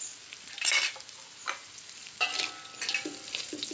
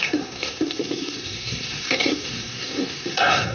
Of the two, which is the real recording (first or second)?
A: first